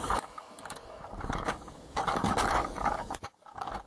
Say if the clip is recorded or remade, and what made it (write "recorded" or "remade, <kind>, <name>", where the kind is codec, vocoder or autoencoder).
remade, codec, DAC